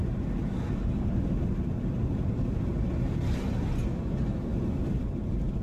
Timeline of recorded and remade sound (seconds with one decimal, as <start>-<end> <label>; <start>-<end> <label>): 0.0-5.6 recorded